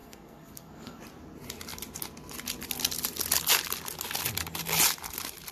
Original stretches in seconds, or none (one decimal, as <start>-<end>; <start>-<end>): 1.0-5.5